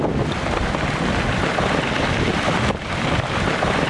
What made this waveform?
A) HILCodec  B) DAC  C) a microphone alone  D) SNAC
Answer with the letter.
C